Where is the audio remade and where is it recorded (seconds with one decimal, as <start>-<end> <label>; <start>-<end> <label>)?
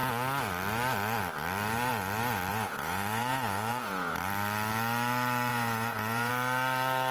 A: 0.0-2.5 recorded; 2.5-4.1 remade; 4.1-5.5 recorded; 5.5-6.3 remade; 6.3-7.1 recorded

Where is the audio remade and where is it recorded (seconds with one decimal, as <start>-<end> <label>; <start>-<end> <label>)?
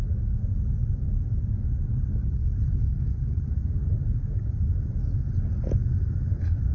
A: 0.0-2.2 recorded; 2.2-3.5 remade; 3.5-6.7 recorded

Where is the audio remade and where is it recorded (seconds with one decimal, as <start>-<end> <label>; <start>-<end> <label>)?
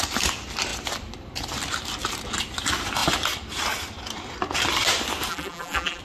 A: 0.0-5.3 recorded; 5.3-6.0 remade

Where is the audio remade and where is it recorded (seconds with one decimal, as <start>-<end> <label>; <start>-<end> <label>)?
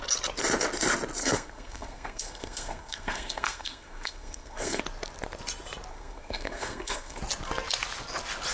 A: 0.0-1.2 recorded; 1.2-4.8 remade; 4.8-5.9 recorded; 5.9-7.2 remade; 7.2-8.5 recorded